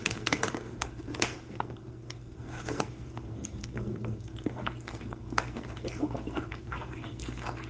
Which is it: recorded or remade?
remade